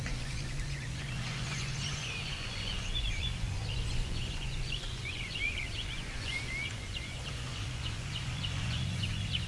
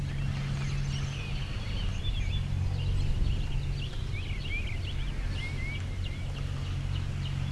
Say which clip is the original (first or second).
second